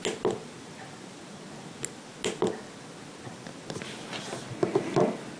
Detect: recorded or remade recorded